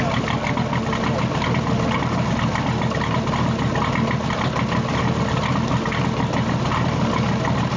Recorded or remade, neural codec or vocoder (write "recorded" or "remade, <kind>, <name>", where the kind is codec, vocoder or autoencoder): recorded